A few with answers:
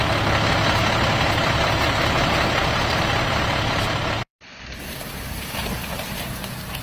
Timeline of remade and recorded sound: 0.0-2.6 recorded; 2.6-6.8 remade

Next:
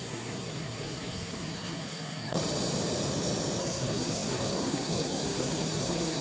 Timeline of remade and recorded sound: 0.0-2.4 remade; 2.4-3.6 recorded; 3.6-6.2 remade